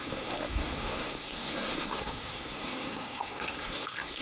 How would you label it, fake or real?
fake